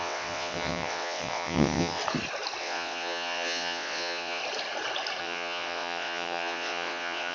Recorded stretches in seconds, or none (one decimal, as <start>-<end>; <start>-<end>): 2.0-2.6; 4.4-5.2